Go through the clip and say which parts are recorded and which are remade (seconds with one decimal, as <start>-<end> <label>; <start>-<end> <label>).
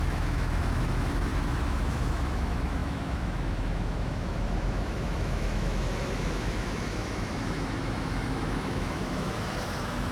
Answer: 0.0-10.1 remade